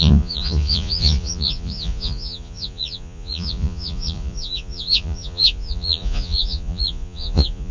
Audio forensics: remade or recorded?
remade